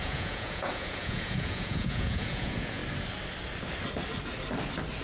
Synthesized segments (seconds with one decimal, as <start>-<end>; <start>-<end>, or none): 0.0-2.8